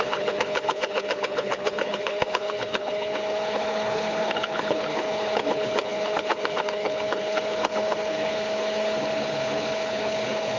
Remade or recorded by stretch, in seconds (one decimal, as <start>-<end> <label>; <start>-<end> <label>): 0.0-10.6 remade